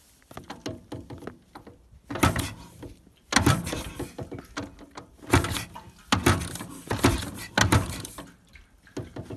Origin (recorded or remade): recorded